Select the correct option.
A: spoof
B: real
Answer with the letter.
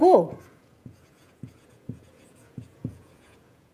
A